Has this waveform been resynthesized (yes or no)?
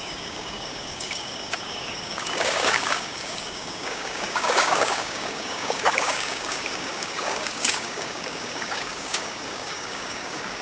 yes